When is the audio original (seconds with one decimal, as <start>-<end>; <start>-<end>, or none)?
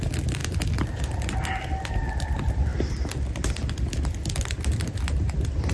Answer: 0.0-5.7